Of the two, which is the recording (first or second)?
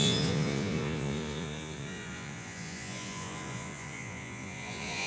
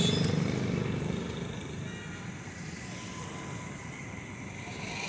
second